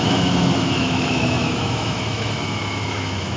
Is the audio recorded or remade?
remade